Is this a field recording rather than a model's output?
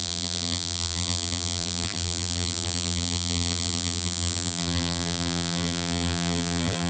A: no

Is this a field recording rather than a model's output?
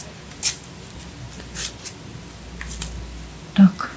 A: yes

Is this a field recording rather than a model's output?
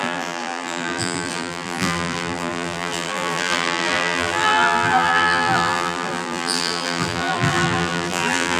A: no